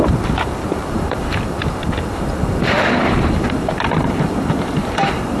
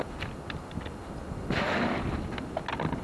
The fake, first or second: first